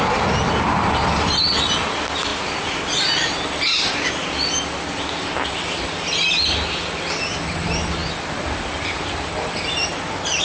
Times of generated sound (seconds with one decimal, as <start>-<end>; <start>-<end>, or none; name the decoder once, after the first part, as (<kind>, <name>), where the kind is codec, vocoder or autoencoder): none